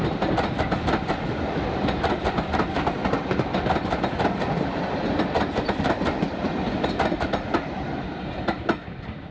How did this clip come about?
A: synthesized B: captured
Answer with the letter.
A